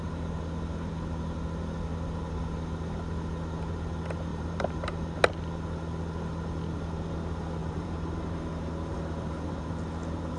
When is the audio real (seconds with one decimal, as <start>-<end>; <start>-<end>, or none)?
0.0-4.3; 5.2-7.6; 8.4-8.9; 9.7-10.4